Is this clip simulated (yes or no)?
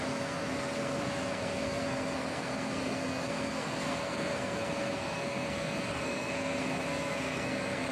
yes